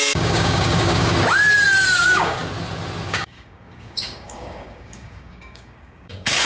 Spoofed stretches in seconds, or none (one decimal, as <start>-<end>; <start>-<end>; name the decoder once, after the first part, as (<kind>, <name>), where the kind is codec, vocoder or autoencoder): 0.0-1.1 (codec, DAC); 2.0-2.4; 3.1-6.5

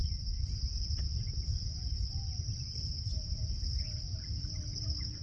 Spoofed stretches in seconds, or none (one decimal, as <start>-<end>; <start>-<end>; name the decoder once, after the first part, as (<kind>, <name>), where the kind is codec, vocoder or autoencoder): none